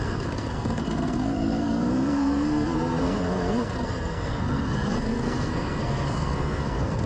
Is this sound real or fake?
fake